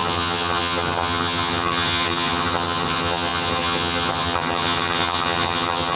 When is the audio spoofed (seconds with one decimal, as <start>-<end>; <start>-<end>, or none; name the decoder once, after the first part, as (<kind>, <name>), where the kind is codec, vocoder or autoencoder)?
0.0-6.0 (vocoder, HiFi-GAN)